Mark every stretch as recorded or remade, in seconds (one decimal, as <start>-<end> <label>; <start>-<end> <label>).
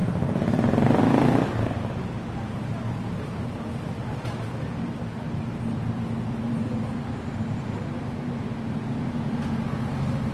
0.0-8.5 remade; 8.5-10.3 recorded